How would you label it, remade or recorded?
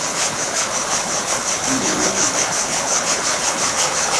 remade